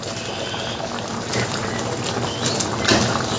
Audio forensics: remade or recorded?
recorded